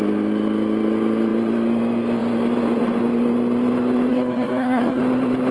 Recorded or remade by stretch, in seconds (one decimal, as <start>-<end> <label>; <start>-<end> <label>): 0.0-4.1 recorded; 4.1-5.0 remade; 5.0-5.5 recorded